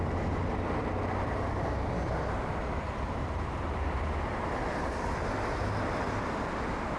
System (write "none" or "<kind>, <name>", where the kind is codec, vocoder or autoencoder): none